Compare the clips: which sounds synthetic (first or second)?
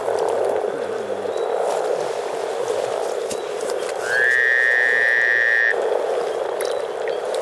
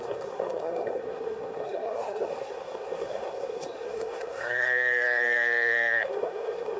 second